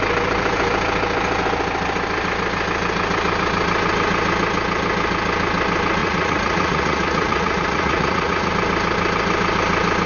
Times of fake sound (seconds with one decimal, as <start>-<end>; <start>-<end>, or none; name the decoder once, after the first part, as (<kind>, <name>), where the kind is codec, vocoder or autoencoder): 6.0-8.5 (vocoder, Vocos)

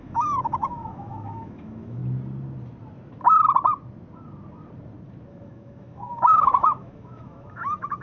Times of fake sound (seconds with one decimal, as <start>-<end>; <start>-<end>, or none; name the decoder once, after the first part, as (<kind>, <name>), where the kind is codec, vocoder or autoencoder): 0.0-2.0 (autoencoder, DAC-VAE); 5.3-8.0

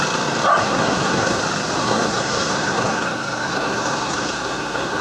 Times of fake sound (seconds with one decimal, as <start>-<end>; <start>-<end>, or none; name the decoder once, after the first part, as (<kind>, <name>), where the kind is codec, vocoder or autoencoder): 0.6-1.4 (codec, SNAC); 1.8-5.0

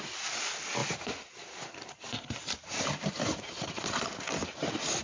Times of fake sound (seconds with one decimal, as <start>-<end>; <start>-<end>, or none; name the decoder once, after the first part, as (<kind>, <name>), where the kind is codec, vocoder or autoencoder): 0.8-3.8 (vocoder, BigVGAN v2)

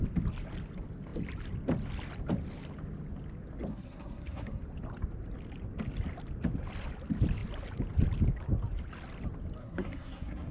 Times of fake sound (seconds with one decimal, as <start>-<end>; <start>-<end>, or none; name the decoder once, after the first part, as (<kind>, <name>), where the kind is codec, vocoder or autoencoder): 3.7-4.6 (codec, SNAC); 9.6-10.5